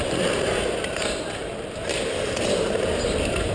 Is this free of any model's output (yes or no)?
yes